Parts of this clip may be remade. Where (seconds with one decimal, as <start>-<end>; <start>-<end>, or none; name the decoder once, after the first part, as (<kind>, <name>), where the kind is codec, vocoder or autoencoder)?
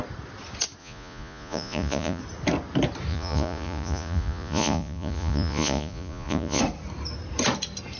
0.8-2.2 (vocoder, Vocos); 3.1-6.6